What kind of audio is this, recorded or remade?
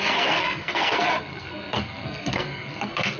remade